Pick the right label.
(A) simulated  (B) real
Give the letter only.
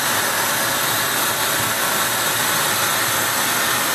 B